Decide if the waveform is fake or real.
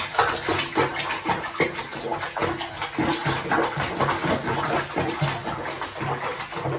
real